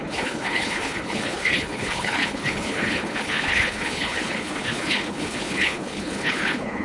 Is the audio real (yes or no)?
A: no